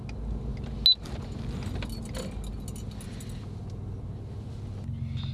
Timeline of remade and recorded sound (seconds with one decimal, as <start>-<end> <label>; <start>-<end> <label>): 0.0-5.3 recorded